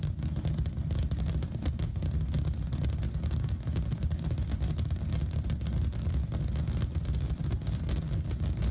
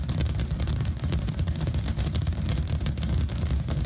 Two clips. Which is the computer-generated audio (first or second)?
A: second